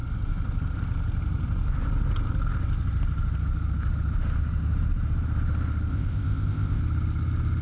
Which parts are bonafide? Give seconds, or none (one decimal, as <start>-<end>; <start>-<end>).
0.0-5.9; 6.8-7.6